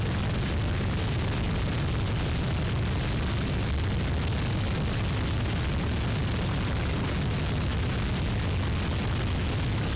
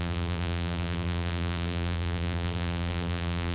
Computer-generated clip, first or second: second